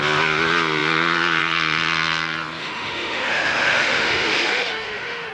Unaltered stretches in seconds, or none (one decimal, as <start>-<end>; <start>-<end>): 0.0-2.6